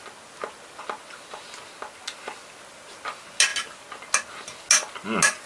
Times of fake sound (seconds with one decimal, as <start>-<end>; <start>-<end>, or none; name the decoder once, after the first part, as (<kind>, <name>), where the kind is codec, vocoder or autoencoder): none